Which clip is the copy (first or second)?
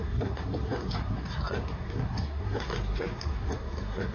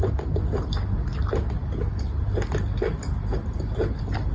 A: first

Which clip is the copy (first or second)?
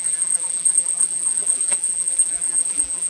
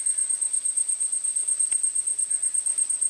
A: first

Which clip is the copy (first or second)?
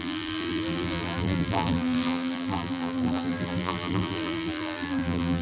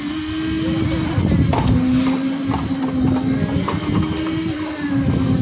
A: first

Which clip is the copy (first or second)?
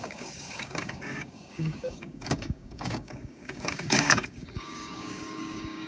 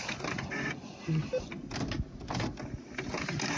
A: first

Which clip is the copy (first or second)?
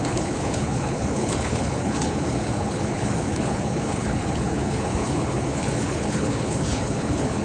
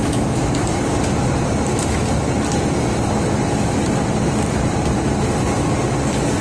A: first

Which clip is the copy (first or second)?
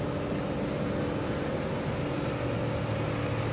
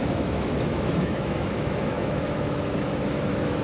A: second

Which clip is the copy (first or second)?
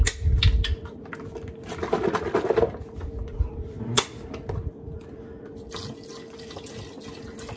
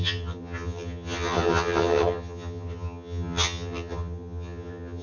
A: second